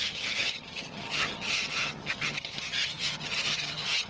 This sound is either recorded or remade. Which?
remade